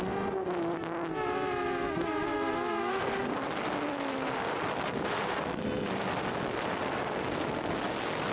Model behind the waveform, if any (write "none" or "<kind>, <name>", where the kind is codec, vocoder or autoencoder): none